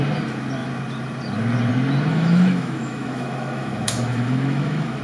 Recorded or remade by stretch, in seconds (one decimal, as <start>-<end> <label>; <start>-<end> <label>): 0.0-2.1 recorded; 2.1-5.0 remade